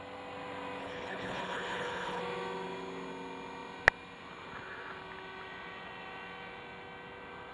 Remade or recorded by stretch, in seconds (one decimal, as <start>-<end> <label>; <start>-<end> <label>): 0.0-0.8 recorded; 0.8-2.2 remade; 2.2-7.5 recorded